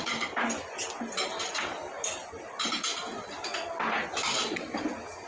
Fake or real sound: real